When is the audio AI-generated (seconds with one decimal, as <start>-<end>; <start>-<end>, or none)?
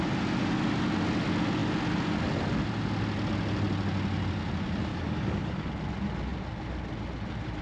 4.9-5.7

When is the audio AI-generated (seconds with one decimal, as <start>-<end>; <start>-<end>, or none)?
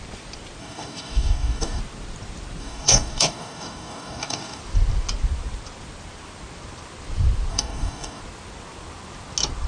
0.6-1.8; 2.6-4.6; 7.5-8.2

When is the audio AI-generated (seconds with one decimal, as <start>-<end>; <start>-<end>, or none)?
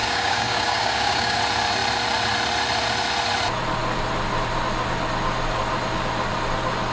0.0-1.4